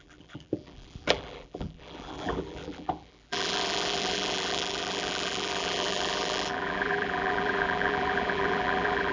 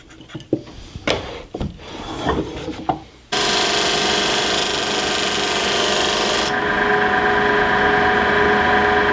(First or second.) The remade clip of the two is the first